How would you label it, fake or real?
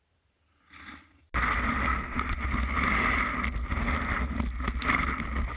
real